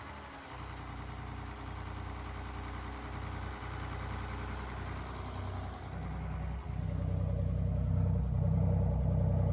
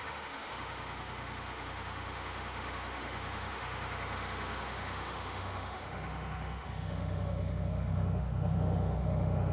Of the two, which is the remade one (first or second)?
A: second